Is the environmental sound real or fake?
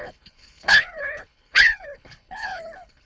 fake